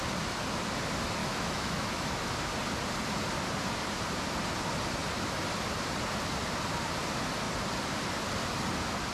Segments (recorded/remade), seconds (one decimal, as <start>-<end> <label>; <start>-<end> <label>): 0.0-1.2 recorded; 1.2-2.3 remade; 2.3-9.1 recorded